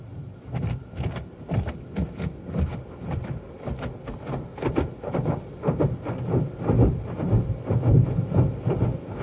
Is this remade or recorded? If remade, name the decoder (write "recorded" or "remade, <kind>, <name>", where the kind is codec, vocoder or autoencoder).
recorded